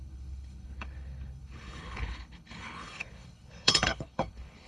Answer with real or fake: fake